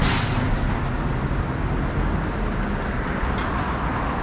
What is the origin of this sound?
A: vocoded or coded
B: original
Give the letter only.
B